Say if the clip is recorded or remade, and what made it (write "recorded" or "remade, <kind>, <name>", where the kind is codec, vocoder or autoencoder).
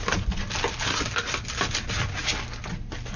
recorded